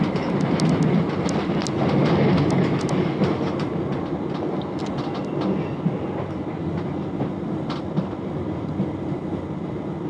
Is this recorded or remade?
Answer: recorded